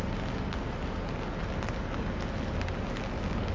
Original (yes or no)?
yes